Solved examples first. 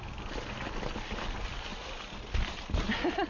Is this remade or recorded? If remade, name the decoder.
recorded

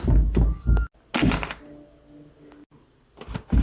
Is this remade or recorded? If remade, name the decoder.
recorded